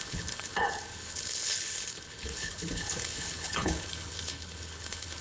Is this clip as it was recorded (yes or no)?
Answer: no